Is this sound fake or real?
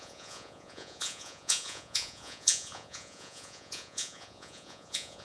fake